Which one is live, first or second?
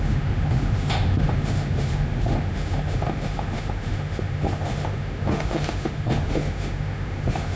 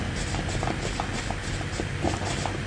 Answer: second